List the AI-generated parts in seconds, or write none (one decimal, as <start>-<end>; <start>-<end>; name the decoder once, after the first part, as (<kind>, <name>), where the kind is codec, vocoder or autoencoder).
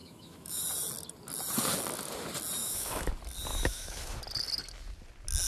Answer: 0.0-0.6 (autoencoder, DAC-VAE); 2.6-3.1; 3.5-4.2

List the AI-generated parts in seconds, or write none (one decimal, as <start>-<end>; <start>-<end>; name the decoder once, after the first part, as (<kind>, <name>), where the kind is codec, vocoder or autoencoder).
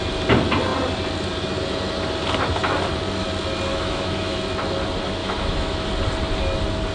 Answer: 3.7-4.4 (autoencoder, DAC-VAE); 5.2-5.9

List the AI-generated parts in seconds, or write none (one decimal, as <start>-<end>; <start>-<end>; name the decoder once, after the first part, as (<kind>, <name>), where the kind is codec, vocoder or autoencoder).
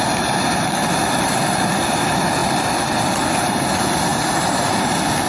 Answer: 4.1-4.7 (vocoder, BigVGAN v2)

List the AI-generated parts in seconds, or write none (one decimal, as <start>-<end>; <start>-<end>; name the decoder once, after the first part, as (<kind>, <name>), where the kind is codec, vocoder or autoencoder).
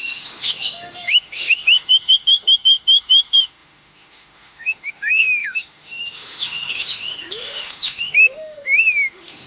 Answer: 0.0-9.5 (autoencoder, DAC-VAE)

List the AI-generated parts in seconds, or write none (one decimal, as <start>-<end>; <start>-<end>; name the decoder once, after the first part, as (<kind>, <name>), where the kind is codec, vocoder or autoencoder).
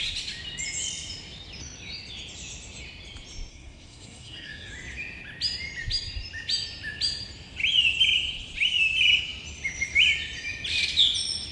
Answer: 3.5-4.7 (codec, SNAC)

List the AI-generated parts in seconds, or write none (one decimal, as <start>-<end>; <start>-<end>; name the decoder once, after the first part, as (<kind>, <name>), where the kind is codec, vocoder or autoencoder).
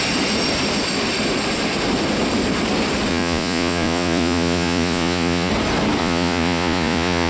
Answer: 3.1-5.5 (vocoder, Vocos); 6.0-7.3